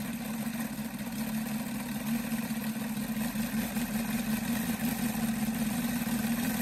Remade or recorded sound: recorded